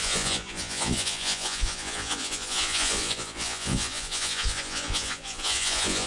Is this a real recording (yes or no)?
no